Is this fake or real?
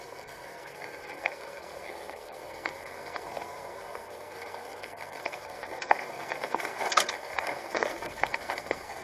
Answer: fake